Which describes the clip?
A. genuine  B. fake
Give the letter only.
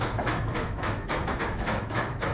B